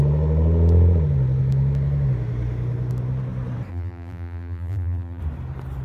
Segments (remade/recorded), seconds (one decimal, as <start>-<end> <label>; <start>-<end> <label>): 0.0-3.7 recorded; 3.7-5.2 remade; 5.2-5.8 recorded